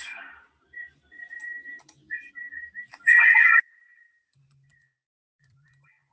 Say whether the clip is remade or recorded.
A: remade